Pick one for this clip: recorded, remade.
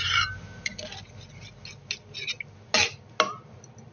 recorded